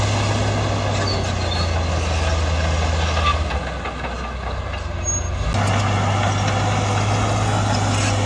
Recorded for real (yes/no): yes